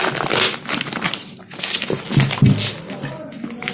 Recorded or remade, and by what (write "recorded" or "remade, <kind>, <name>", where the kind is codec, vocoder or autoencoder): recorded